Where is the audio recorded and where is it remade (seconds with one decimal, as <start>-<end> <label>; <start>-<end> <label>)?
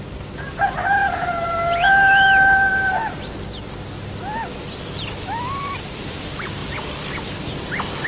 0.0-8.1 recorded